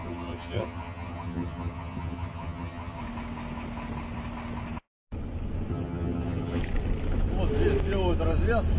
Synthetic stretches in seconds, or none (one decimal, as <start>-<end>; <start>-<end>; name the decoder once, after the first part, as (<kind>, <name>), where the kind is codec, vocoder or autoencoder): 0.0-3.0 (vocoder, HiFi-GAN); 5.7-6.6